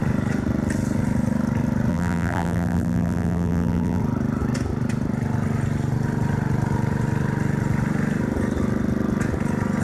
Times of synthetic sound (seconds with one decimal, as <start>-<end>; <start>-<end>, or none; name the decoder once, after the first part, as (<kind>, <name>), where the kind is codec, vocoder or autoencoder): 1.9-4.0 (vocoder, BigVGAN v2)